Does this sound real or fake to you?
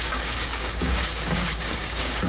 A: fake